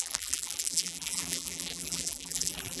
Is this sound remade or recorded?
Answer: remade